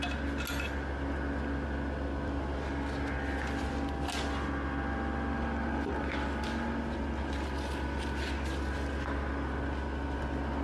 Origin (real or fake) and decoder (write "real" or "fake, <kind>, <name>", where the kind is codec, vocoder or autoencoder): real